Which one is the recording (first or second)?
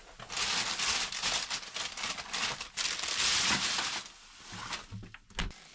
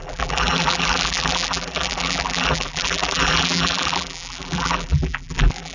first